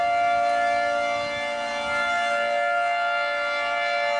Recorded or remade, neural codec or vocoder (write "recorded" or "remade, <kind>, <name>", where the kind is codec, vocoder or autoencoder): recorded